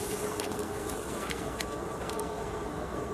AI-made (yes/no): yes